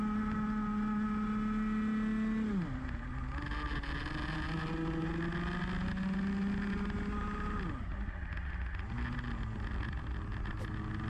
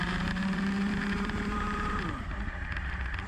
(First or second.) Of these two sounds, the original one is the first